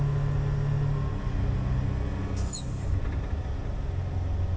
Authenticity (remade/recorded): recorded